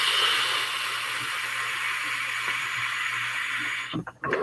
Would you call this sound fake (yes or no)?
no